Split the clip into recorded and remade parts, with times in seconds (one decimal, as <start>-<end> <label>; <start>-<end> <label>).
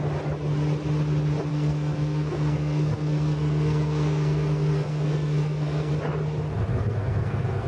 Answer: 0.0-1.5 recorded; 1.5-5.9 remade; 5.9-6.7 recorded; 6.7-7.7 remade